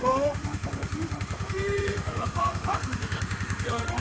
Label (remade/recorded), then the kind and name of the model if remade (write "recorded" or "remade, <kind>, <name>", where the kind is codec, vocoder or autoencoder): remade, autoencoder, DAC-VAE